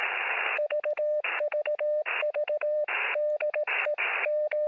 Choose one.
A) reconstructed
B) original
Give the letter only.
A